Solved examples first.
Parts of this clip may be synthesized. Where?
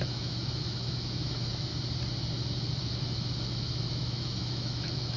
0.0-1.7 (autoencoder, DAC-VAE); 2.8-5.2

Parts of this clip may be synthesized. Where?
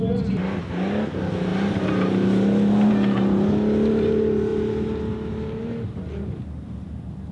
none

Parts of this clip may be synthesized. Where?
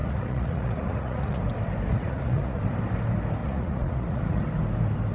0.0-1.4 (vocoder, Vocos); 1.9-2.6; 3.4-4.4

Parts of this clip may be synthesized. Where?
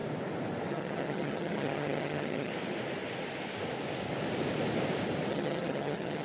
0.7-2.5 (vocoder, HiFi-GAN); 5.3-6.2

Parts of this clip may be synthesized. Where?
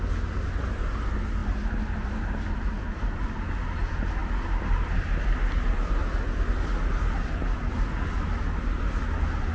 1.4-3.5 (vocoder, BigVGAN v2)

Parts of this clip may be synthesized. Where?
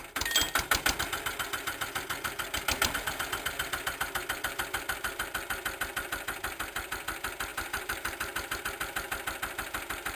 7.5-8.6 (vocoder, BigVGAN v2)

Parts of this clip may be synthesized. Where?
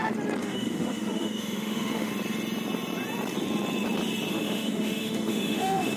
0.4-2.1 (autoencoder, DAC-VAE); 4.3-6.0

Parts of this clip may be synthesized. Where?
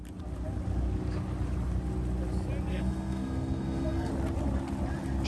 2.7-4.1 (codec, SNAC)